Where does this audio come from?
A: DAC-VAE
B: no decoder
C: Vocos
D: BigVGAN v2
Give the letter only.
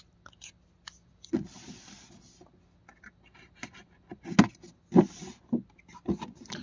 B